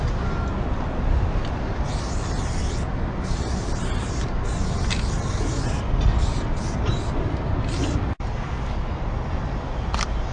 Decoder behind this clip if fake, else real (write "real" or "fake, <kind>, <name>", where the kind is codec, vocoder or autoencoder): real